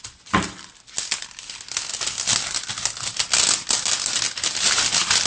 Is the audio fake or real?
real